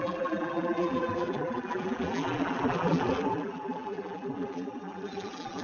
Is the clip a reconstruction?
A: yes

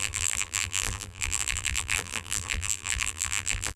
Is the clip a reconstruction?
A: yes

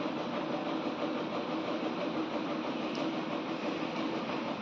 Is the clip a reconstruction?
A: yes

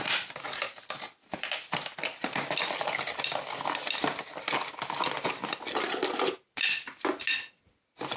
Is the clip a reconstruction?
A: no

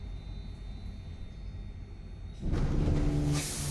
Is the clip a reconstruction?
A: no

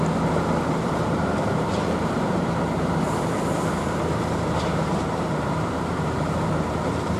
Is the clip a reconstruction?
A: yes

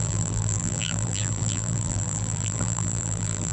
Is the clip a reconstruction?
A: yes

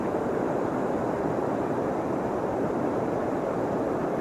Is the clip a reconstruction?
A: no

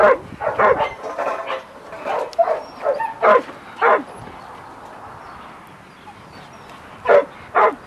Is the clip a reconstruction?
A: no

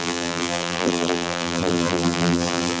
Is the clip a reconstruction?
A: yes